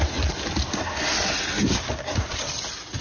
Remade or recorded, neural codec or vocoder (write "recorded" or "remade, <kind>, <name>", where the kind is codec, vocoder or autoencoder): recorded